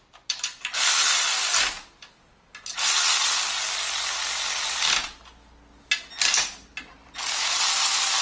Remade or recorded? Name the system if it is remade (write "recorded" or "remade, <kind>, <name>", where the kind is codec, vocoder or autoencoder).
recorded